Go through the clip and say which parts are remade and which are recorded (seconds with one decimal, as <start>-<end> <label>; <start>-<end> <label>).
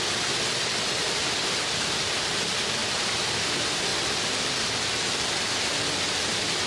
0.0-2.8 remade; 2.8-3.3 recorded; 3.3-3.9 remade; 3.9-4.4 recorded; 4.4-6.7 remade